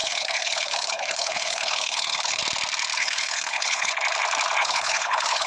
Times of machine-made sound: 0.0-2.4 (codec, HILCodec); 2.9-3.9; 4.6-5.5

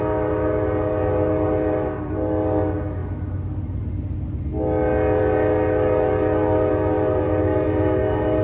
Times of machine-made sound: none

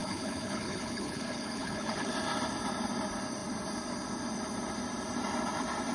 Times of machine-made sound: 0.0-2.1 (codec, HILCodec)

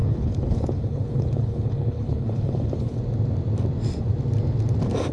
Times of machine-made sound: 0.0-3.0 (codec, HILCodec)

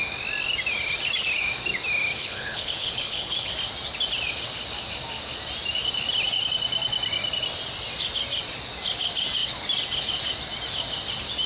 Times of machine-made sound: 2.2-3.5 (codec, HILCodec)

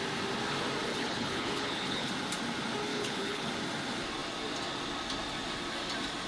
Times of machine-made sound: 0.9-2.1 (codec, HILCodec); 2.9-3.5

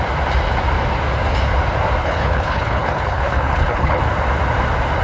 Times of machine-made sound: 2.0-4.0 (codec, HILCodec)